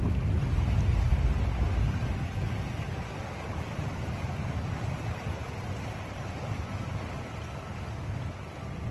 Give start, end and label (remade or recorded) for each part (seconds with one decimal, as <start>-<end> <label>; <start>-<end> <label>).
0.0-8.9 recorded